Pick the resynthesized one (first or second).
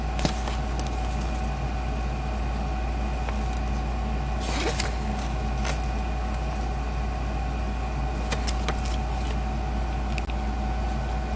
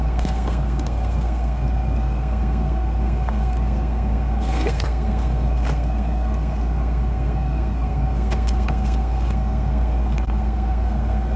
second